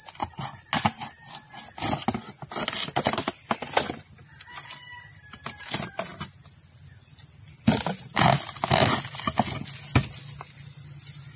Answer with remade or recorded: recorded